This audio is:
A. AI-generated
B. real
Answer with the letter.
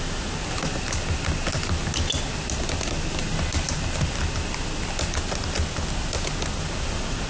B